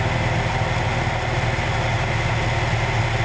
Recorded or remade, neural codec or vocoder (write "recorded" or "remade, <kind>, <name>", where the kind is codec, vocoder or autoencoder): recorded